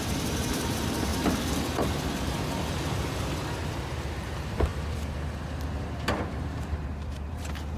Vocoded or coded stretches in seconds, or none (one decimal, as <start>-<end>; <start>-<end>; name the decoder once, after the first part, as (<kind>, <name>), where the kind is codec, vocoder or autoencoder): 0.0-1.1 (vocoder, BigVGAN v2); 4.2-4.7; 6.3-7.8